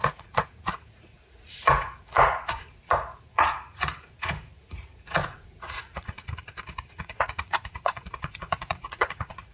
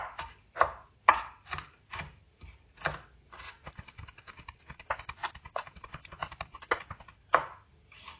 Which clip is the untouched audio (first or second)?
second